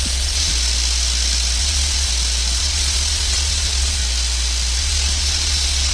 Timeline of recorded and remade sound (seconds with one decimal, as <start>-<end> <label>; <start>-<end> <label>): 0.0-0.5 remade; 0.5-1.6 recorded; 1.6-2.1 remade; 2.1-2.6 recorded; 2.6-4.0 remade; 4.0-4.8 recorded; 4.8-5.9 remade